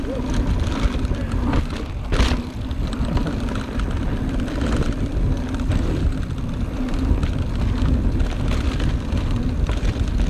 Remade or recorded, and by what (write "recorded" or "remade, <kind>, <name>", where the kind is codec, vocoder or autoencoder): recorded